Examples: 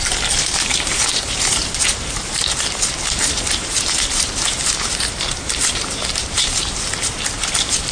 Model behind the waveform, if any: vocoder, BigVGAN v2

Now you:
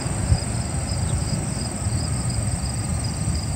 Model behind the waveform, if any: vocoder, BigVGAN v2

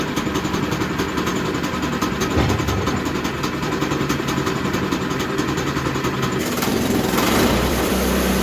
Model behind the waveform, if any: vocoder, BigVGAN v2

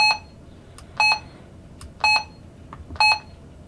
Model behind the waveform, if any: none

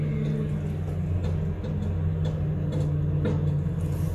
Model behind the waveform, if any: none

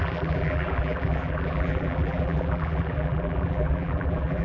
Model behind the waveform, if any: vocoder, BigVGAN v2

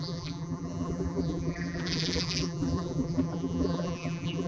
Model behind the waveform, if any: vocoder, BigVGAN v2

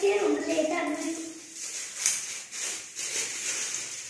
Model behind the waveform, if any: vocoder, BigVGAN v2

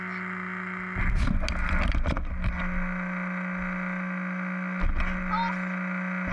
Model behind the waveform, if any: none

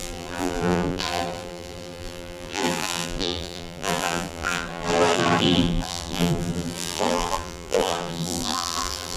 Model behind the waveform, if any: vocoder, BigVGAN v2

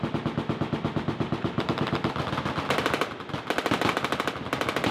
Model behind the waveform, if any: none